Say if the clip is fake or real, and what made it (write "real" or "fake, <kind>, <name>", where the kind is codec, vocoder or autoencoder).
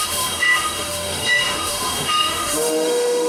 fake, autoencoder, DAC-VAE